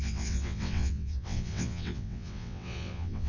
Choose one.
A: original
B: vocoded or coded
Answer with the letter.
B